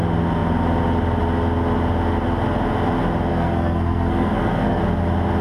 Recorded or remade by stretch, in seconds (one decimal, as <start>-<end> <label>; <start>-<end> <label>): 0.0-3.3 recorded; 3.3-4.8 remade; 4.8-5.4 recorded